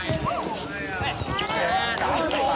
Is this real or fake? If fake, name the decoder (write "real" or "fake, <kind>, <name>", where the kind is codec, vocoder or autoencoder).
real